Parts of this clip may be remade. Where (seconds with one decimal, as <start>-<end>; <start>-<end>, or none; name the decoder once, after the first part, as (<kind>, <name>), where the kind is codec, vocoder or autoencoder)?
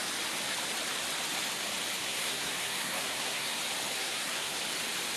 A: 2.0-3.6 (codec, SNAC); 4.0-4.6